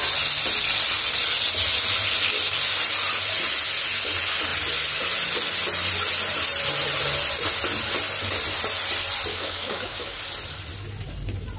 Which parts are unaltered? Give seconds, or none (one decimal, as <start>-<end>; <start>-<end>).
0.0-9.3; 10.2-11.6